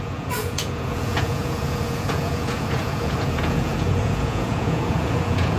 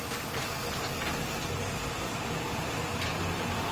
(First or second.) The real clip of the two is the second